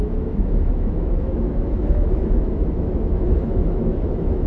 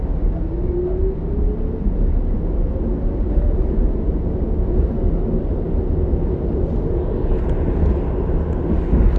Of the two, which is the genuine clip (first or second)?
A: second